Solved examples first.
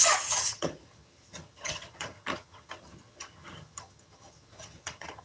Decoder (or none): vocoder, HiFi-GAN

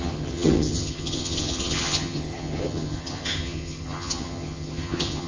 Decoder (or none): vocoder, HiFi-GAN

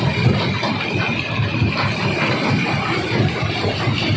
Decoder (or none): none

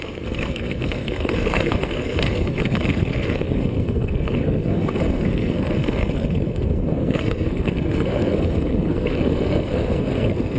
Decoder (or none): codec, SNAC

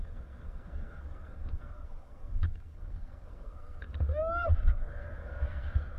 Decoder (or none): codec, SNAC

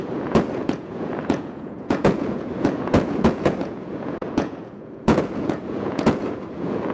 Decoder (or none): vocoder, Vocos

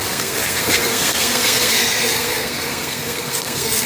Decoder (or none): codec, SNAC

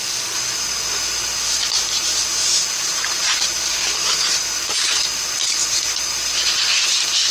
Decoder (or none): none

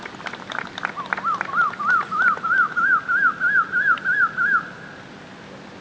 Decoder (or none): none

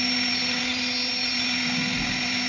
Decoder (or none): none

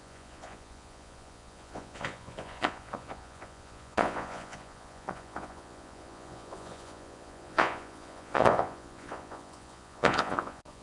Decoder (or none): vocoder, Vocos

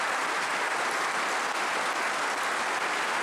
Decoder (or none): none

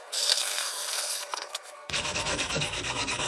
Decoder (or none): codec, SNAC